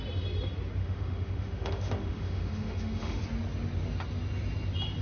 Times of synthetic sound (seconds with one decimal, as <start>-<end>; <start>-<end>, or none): 0.8-3.2